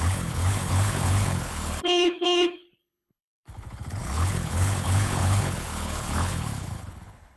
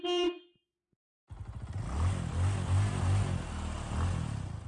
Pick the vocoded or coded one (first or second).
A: first